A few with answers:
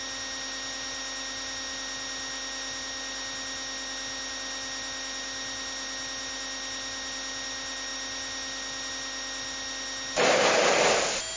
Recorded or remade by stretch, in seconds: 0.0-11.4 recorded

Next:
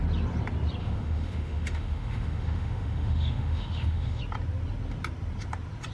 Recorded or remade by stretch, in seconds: 0.0-0.8 recorded; 0.8-4.2 remade; 4.2-5.9 recorded